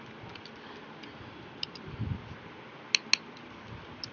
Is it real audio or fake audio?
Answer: real